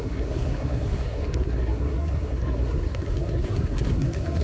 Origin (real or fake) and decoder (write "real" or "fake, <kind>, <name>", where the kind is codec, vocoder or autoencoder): fake, codec, SNAC